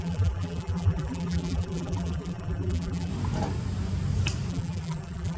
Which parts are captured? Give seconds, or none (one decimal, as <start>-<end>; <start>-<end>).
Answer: 3.1-4.5